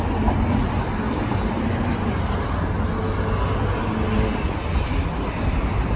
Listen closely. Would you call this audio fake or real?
real